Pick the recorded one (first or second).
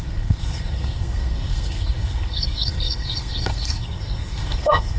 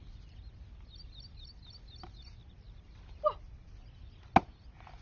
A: second